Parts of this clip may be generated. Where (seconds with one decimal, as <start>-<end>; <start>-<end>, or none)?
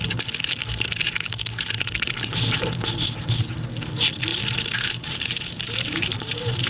4.3-6.7